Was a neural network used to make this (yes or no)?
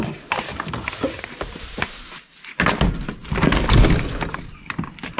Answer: no